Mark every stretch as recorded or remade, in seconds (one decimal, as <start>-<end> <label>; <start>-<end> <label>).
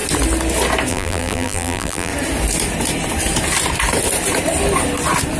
0.0-0.9 recorded; 0.9-2.1 remade; 2.1-5.4 recorded